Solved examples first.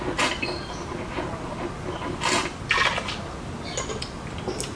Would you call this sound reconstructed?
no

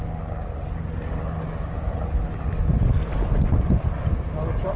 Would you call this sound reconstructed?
no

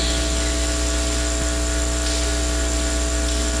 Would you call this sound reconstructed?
no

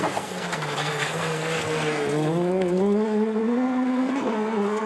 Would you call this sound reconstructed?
yes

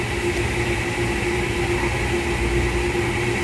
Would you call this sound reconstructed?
no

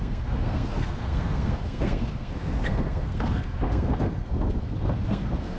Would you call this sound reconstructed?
yes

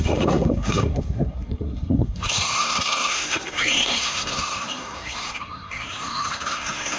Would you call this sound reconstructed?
yes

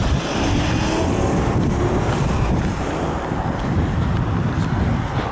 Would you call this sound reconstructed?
no